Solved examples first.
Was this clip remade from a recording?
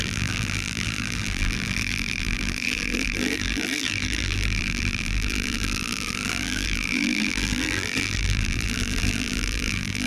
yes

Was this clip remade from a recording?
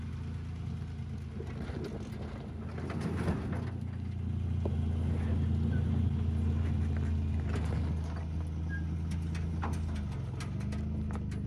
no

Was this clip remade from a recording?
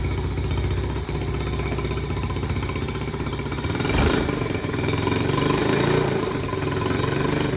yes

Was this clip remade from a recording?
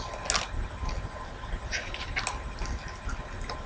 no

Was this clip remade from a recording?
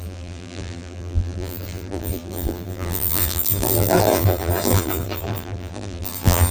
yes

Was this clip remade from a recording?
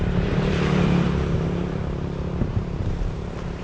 yes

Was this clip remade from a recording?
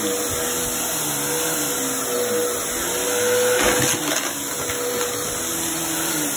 no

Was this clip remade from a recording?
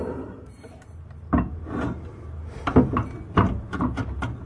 no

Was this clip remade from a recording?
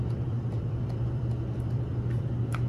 yes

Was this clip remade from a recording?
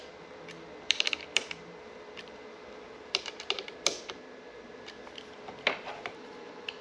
yes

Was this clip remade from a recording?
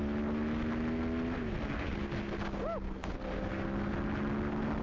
no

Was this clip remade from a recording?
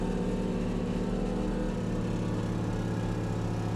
no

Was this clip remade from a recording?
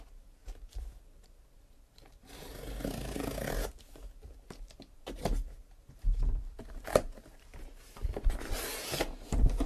yes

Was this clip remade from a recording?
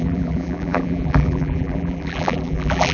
yes